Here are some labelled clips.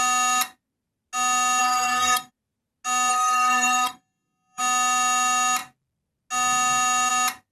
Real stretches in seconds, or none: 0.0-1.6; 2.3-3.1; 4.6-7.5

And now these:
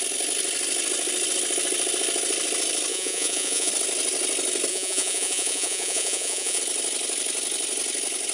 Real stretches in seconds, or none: 0.0-2.9; 3.7-4.7; 6.6-8.3

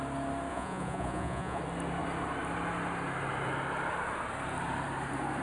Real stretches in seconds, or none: 0.0-0.5; 1.6-5.4

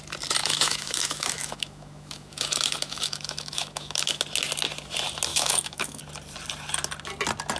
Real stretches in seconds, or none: 0.0-0.4; 4.2-5.3; 6.0-7.6

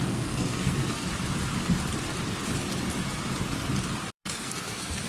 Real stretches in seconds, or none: 1.1-4.1

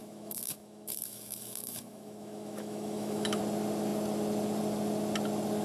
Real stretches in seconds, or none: 3.4-5.6

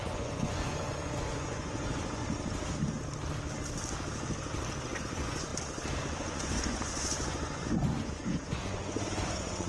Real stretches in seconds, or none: 2.2-5.0; 5.5-6.0